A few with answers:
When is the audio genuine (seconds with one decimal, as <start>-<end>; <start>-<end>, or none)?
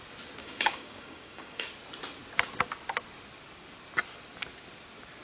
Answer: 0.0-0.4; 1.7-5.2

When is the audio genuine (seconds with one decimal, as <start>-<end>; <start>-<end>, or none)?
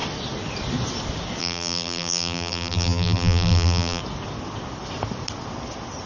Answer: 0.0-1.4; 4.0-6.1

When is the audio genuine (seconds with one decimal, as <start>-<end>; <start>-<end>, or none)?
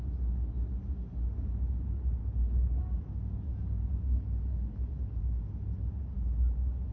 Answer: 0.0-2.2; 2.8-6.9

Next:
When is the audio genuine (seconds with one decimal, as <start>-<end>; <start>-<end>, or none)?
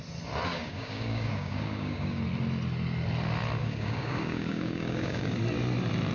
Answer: 0.0-0.5; 2.2-3.6; 5.4-6.1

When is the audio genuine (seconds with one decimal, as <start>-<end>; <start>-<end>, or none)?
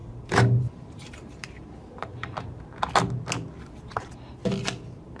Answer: 2.9-5.2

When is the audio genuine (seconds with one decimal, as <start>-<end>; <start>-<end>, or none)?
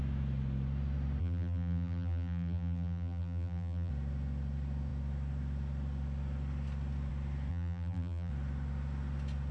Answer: 0.0-1.2; 3.9-7.5; 8.3-9.5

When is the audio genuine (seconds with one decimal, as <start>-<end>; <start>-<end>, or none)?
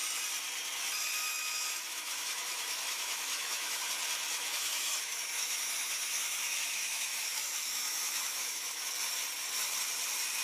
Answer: 0.0-1.9; 3.9-4.3; 8.9-10.4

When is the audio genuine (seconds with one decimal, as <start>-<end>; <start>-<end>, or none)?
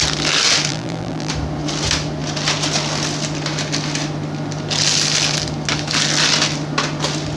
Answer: 0.0-0.7; 1.3-7.4